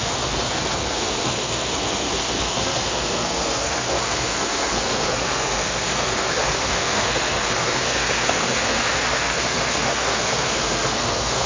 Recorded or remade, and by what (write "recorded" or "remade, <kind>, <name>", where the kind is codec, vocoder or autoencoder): remade, codec, SNAC